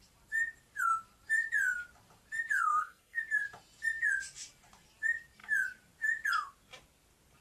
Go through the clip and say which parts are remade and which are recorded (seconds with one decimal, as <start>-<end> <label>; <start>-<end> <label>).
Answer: 0.0-2.7 recorded; 2.7-3.2 remade; 3.2-7.4 recorded